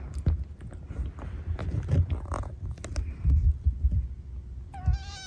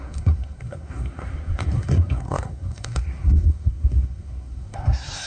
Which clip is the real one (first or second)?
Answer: first